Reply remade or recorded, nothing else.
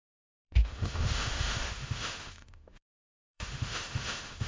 remade